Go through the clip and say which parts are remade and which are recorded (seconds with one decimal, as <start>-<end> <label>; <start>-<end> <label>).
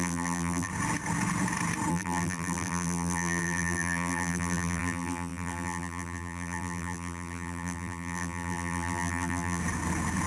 0.0-0.7 remade; 0.7-1.9 recorded; 1.9-9.6 remade; 9.6-10.3 recorded